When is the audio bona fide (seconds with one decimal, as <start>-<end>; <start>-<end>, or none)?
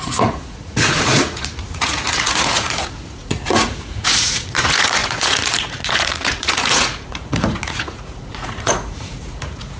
none